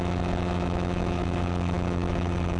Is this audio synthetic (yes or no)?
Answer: yes